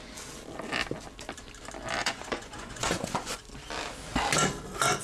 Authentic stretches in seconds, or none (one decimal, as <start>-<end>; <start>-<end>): 0.0-2.0; 3.5-5.0